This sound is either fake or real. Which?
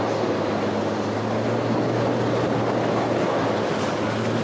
real